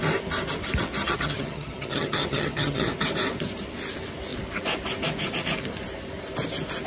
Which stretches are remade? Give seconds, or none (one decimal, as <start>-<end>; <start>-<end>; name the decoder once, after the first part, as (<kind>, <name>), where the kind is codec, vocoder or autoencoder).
1.0-2.9 (vocoder, HiFi-GAN)